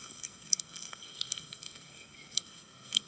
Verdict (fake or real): fake